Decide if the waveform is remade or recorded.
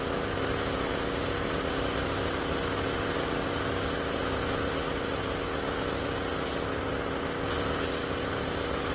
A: recorded